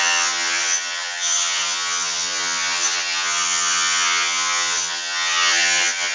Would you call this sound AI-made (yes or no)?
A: yes